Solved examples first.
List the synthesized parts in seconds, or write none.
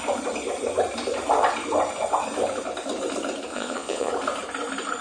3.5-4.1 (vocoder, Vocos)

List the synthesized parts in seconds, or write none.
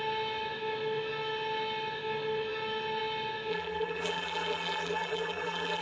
3.5-5.8 (vocoder, BigVGAN v2)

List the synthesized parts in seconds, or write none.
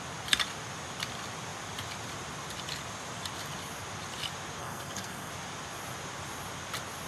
4.6-5.3 (codec, SNAC)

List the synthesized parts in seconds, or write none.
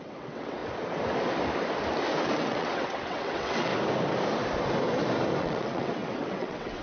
0.0-0.6 (vocoder, WaveNeXt); 2.3-3.7; 5.4-6.8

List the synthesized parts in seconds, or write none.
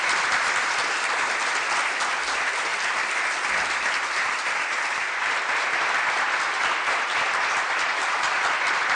none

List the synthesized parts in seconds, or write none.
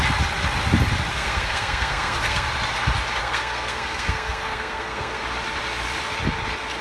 1.1-2.5 (codec, SNAC); 3.2-5.2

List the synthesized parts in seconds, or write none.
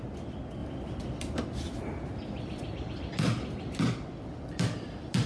none